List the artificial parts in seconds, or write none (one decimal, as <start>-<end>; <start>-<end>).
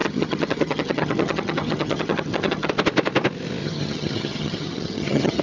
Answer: 0.0-2.7; 3.6-5.4